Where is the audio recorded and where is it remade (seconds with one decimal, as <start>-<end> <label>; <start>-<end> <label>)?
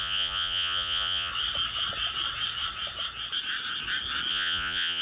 0.0-1.3 remade; 1.3-4.3 recorded; 4.3-5.0 remade